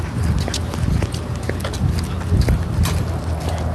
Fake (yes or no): no